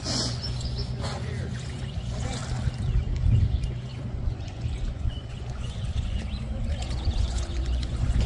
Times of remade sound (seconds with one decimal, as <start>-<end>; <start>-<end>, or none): 0.0-2.4; 3.5-8.3